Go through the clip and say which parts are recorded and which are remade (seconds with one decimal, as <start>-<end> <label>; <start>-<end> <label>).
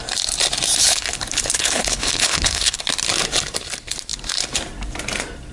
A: 0.0-0.8 recorded; 0.8-2.8 remade; 2.8-5.5 recorded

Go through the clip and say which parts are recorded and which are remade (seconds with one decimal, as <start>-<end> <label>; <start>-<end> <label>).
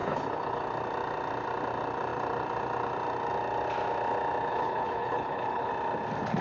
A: 0.0-0.6 remade; 0.6-4.5 recorded; 4.5-5.7 remade; 5.7-6.4 recorded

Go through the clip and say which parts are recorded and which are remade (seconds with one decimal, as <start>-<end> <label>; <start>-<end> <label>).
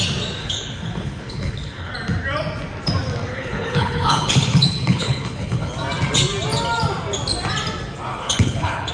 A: 0.0-0.4 recorded; 0.4-1.9 remade; 1.9-3.3 recorded; 3.3-5.7 remade; 5.7-8.1 recorded; 8.1-8.9 remade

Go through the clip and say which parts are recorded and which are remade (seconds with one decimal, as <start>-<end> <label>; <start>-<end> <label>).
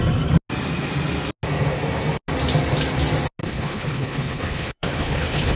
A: 0.0-3.4 recorded; 3.4-5.6 remade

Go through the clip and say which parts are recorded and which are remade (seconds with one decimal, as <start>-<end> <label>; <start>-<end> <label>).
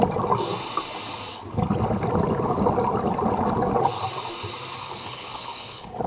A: 0.0-4.8 recorded; 4.8-6.1 remade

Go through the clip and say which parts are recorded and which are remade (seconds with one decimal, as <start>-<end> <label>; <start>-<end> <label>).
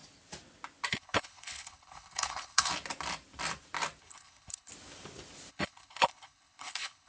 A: 0.0-0.9 recorded; 0.9-2.7 remade; 2.7-4.0 recorded; 4.0-4.7 remade; 4.7-5.5 recorded; 5.5-7.1 remade